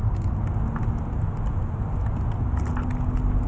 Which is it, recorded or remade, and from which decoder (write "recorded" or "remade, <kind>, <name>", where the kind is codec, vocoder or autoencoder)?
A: recorded